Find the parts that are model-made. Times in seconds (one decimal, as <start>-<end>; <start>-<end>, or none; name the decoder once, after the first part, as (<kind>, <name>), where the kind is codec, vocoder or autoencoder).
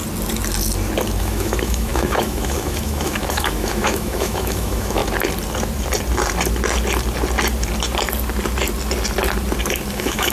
1.2-5.0 (autoencoder, DAC-VAE); 9.9-10.3